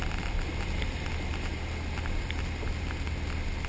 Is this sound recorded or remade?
recorded